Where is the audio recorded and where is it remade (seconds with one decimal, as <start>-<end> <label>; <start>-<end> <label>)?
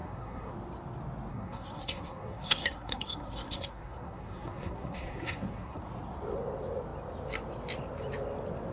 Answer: 0.0-0.5 remade; 0.5-1.3 recorded; 1.3-5.8 remade; 5.8-8.7 recorded